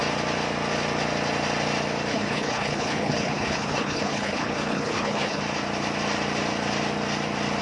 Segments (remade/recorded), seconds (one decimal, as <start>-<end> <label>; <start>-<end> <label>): 0.0-2.1 recorded; 2.1-5.4 remade; 5.4-7.6 recorded

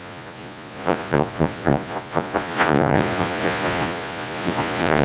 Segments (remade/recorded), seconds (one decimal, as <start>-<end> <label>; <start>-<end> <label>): 0.0-5.0 remade

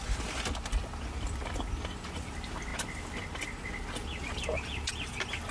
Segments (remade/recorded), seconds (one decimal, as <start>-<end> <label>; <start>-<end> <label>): 0.0-5.5 recorded

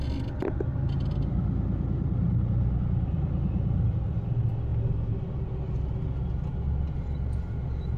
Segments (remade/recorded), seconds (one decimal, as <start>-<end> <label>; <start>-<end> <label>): 0.0-8.0 recorded